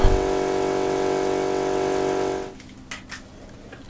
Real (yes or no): yes